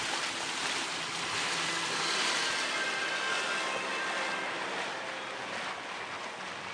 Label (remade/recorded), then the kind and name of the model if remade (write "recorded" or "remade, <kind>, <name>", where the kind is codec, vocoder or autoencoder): recorded